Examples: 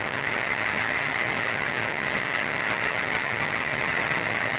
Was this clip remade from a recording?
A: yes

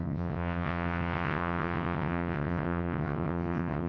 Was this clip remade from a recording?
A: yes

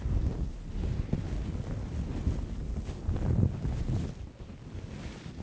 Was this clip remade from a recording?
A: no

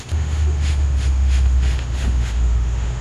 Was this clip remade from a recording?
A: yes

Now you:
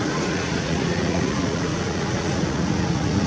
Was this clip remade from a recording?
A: yes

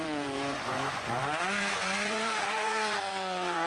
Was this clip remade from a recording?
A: yes